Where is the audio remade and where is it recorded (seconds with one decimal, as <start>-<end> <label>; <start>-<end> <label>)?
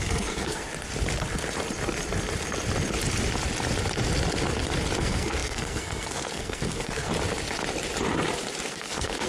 0.0-0.7 remade; 0.7-5.0 recorded; 5.0-7.1 remade; 7.1-8.7 recorded; 8.7-9.3 remade